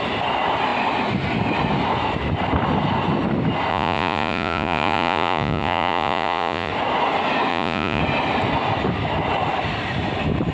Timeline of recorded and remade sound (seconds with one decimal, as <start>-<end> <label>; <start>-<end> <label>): 0.0-3.7 recorded; 3.7-6.7 remade; 6.7-7.5 recorded; 7.5-8.0 remade; 8.0-10.5 recorded